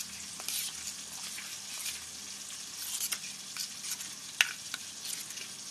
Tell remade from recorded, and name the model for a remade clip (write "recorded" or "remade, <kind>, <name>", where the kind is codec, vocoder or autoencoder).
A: recorded